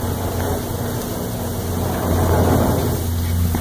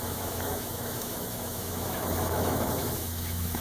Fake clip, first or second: second